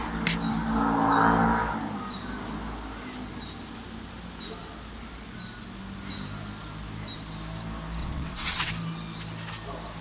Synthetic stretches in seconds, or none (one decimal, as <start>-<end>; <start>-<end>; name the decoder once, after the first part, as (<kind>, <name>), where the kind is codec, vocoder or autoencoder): 8.0-8.7 (vocoder, WaveNeXt)